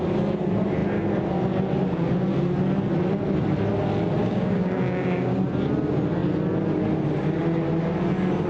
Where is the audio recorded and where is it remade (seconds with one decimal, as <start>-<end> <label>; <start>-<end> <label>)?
0.0-4.2 recorded; 4.2-5.4 remade; 5.4-8.5 recorded